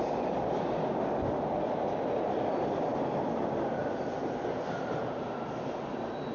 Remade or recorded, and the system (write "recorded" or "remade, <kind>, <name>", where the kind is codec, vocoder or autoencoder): recorded